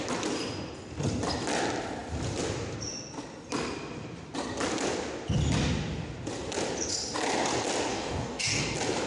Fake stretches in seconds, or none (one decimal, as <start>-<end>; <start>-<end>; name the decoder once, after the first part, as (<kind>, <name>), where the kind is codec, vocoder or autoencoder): 7.9-8.6 (codec, DAC)